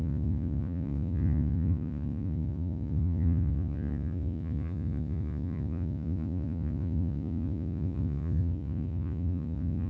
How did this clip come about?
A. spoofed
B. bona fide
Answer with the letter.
A